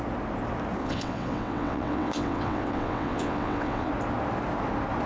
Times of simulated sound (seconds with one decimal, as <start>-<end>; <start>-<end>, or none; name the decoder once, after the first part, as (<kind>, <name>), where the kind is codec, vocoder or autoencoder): 0.8-3.9 (vocoder, WaveNeXt)